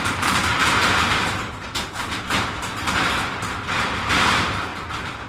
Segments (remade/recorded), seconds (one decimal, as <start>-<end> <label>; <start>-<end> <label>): 0.0-4.7 remade; 4.7-5.3 recorded